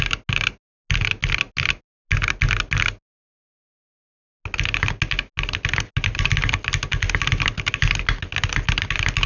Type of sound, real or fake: real